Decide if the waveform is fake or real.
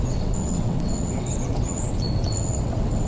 fake